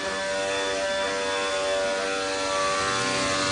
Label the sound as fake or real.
real